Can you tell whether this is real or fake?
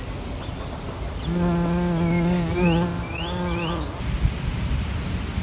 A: real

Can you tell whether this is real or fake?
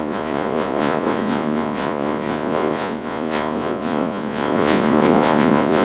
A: fake